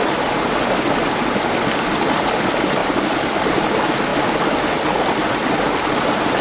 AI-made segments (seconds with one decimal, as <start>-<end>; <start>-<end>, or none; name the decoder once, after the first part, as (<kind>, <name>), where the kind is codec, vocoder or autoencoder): none